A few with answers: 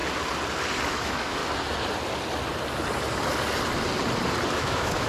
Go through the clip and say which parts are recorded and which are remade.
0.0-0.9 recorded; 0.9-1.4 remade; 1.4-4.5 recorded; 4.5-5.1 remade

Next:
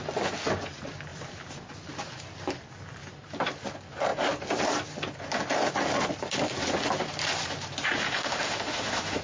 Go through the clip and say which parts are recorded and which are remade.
0.0-8.0 recorded; 8.0-9.2 remade